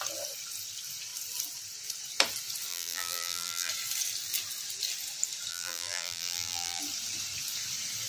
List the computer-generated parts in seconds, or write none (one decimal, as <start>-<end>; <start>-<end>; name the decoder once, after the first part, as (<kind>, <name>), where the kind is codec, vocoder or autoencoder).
2.7-3.7 (vocoder, BigVGAN v2); 5.5-6.8